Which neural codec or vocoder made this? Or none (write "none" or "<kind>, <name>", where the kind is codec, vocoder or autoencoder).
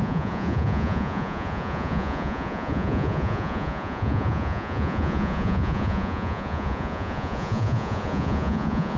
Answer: vocoder, Vocos